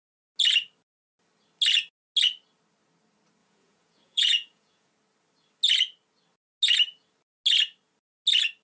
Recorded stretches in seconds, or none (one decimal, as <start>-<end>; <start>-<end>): 0.0-3.4; 4.9-8.6